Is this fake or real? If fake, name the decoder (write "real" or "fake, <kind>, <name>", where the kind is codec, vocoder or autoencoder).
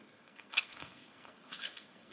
fake, codec, SNAC